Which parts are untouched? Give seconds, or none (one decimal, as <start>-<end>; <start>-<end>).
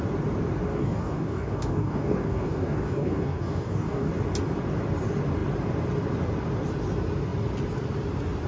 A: 0.0-0.7; 4.1-8.5